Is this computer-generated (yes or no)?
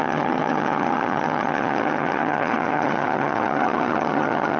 yes